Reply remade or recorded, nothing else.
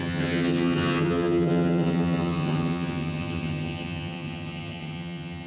remade